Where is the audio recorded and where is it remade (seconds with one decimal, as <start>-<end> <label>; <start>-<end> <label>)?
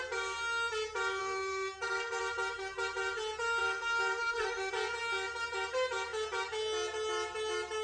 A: 0.0-1.2 recorded; 1.2-2.2 remade; 2.2-3.6 recorded; 3.6-4.7 remade; 4.7-7.8 recorded